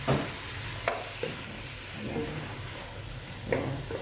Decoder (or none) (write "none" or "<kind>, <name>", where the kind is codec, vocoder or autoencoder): none